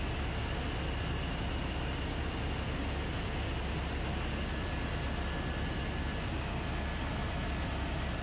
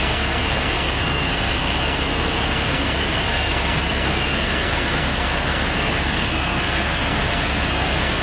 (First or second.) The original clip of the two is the first